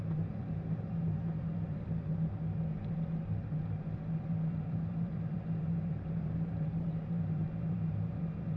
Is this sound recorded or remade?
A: remade